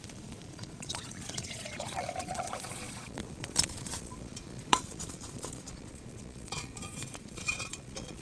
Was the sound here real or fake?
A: fake